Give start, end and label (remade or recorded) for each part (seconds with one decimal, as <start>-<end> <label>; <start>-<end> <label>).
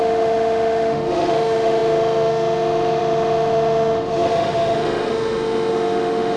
0.0-6.4 remade